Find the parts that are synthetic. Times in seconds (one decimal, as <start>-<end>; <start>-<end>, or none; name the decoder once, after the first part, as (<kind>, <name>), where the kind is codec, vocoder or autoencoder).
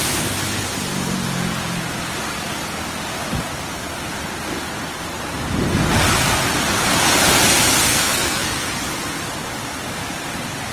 7.9-8.8 (codec, SNAC)